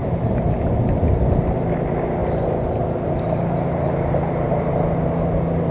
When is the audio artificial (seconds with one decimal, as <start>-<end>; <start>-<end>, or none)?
0.0-0.6